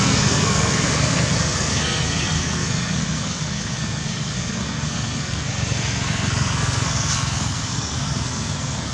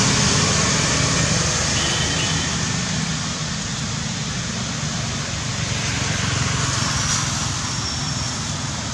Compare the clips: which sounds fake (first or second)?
first